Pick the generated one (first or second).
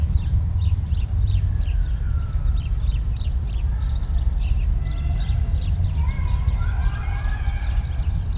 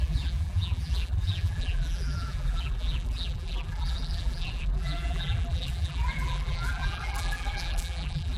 second